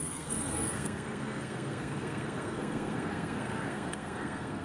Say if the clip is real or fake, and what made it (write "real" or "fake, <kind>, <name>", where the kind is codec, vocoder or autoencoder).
fake, codec, SNAC